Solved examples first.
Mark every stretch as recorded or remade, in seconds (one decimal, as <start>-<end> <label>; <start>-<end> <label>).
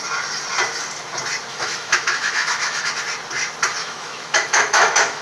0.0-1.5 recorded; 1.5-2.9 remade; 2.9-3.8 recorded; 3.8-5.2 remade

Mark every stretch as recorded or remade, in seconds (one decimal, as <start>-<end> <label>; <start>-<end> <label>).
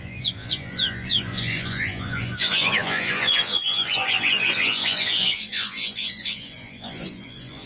0.0-7.7 remade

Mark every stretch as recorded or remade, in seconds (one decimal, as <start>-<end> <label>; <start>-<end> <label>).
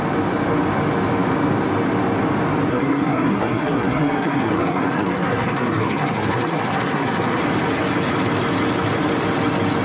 0.0-2.7 recorded; 2.7-7.4 remade; 7.4-9.8 recorded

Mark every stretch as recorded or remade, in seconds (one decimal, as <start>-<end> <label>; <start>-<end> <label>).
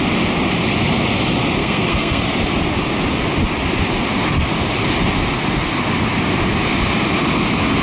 0.0-1.6 recorded; 1.6-2.2 remade; 2.2-7.8 recorded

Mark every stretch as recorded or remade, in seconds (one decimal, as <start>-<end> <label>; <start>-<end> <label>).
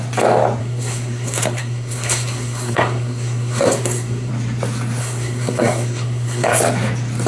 0.0-0.6 recorded; 0.6-4.3 remade; 4.3-5.0 recorded; 5.0-6.6 remade; 6.6-7.3 recorded